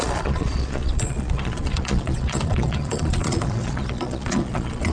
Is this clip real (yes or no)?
no